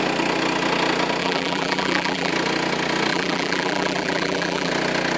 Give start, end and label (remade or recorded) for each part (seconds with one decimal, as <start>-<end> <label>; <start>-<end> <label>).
0.0-1.2 recorded; 1.2-2.3 remade; 2.3-3.1 recorded; 3.1-4.7 remade; 4.7-5.2 recorded